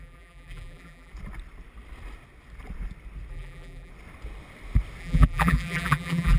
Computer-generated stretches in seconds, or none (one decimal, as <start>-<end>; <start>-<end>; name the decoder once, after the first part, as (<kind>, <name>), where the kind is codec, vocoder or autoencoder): 0.0-1.1 (vocoder, BigVGAN v2); 3.3-3.9; 5.0-6.4